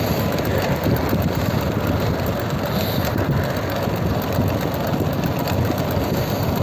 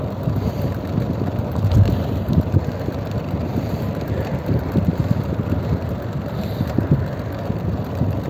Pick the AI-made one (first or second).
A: second